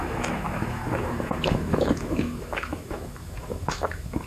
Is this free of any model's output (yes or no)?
no